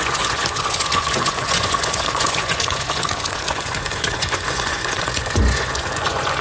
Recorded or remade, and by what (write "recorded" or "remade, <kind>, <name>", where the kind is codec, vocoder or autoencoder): remade, vocoder, Vocos